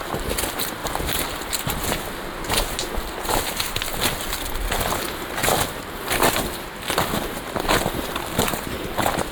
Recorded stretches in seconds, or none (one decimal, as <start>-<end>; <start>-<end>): 0.0-9.3